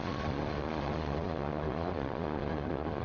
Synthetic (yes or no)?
yes